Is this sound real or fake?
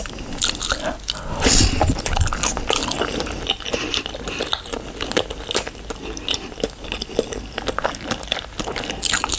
real